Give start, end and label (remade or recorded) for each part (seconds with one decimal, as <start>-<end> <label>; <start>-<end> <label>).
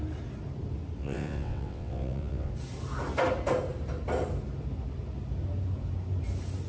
0.0-1.0 recorded; 1.0-2.5 remade; 2.5-6.7 recorded